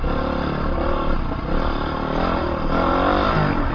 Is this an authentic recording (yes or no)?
yes